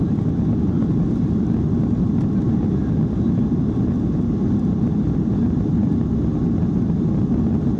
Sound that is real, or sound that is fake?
real